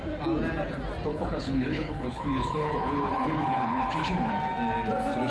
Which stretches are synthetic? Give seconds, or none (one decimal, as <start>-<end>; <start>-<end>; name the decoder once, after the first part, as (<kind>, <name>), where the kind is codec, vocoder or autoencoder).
1.1-4.3 (codec, HILCodec)